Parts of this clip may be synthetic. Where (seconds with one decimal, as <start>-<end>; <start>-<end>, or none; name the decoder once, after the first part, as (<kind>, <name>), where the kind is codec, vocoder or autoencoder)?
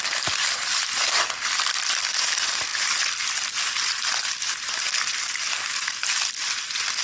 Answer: none